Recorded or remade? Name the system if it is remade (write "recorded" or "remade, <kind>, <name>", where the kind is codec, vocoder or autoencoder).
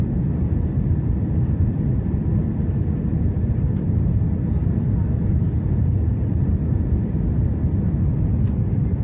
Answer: recorded